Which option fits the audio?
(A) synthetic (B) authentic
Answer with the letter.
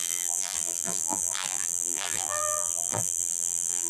A